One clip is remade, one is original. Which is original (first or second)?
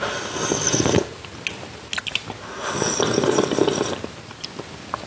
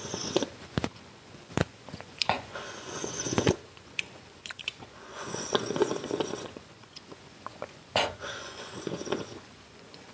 first